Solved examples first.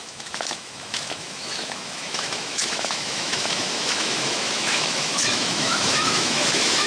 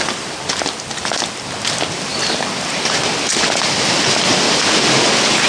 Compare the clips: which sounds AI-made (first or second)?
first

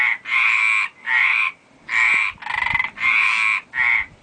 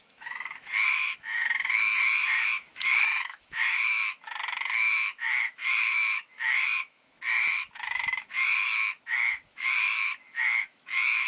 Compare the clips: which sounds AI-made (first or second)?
second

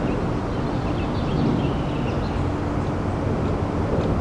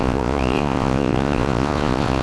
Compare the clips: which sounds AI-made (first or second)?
second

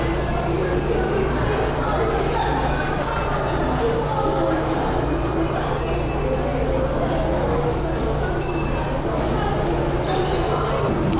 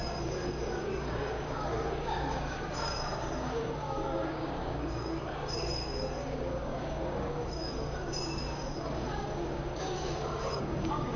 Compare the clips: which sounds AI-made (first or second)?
second